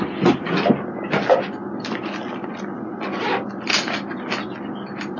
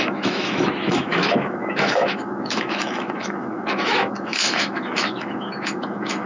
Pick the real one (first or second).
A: first